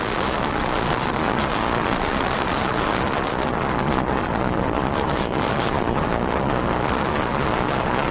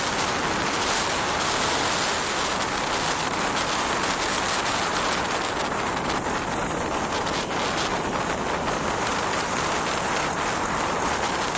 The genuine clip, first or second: second